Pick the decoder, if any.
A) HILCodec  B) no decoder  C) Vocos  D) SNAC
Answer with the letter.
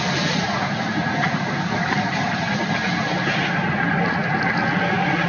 B